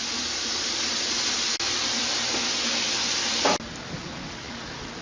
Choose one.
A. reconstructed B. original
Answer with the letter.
B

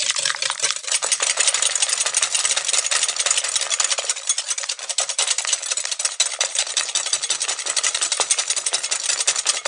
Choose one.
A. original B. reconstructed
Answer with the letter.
A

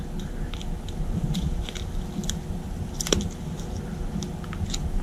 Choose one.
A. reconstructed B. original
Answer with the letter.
B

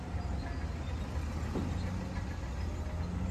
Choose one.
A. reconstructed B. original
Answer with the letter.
B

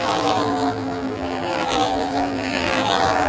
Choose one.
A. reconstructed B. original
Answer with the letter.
A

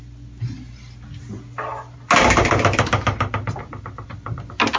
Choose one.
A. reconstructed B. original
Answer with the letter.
B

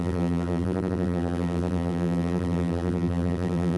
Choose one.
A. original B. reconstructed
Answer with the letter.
B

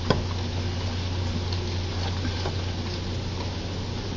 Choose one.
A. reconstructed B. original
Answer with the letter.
B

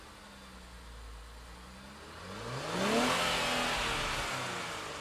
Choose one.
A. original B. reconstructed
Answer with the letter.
A